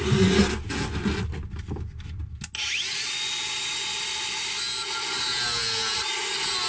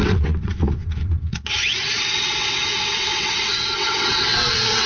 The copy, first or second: second